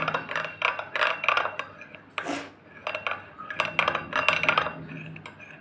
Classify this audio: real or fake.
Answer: real